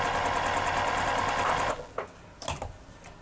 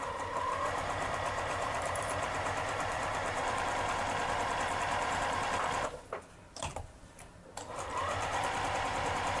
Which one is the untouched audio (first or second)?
first